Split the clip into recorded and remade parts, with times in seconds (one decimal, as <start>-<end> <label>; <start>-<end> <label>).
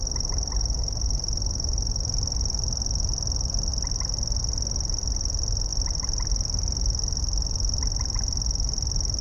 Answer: 0.0-9.2 recorded